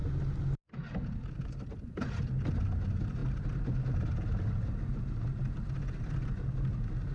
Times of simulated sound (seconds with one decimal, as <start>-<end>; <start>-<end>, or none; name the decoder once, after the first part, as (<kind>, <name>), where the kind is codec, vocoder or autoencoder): none